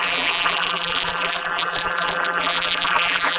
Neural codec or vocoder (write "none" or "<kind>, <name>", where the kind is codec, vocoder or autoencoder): vocoder, BigVGAN v2